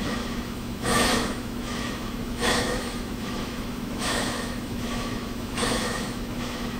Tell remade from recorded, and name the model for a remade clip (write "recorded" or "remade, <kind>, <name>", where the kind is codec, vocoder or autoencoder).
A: remade, autoencoder, DAC-VAE